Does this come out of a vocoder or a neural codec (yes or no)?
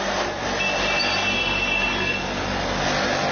no